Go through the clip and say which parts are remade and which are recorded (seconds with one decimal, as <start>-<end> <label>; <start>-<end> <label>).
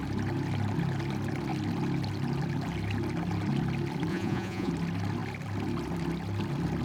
0.0-4.1 recorded; 4.1-4.7 remade; 4.7-6.8 recorded